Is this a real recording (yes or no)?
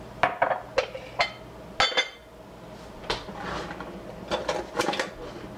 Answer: yes